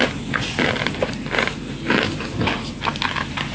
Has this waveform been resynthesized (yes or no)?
no